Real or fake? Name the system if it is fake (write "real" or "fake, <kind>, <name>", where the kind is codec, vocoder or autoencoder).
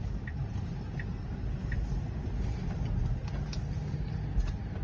real